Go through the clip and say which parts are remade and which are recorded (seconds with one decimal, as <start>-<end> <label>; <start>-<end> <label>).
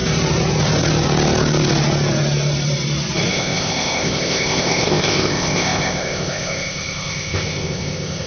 0.0-3.3 recorded; 3.3-8.3 remade